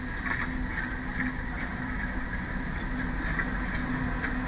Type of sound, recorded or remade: recorded